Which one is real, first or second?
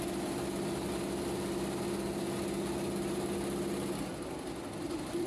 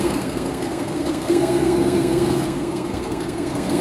first